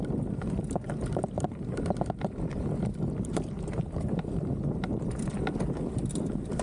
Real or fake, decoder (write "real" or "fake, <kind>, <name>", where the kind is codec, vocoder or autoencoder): real